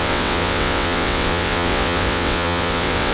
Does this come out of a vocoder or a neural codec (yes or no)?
yes